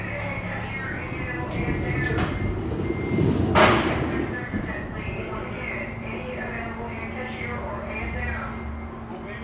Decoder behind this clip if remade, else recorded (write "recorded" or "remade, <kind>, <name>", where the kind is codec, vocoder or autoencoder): recorded